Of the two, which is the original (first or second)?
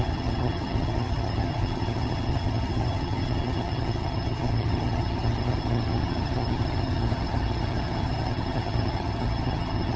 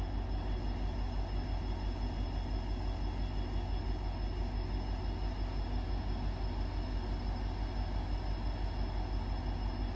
second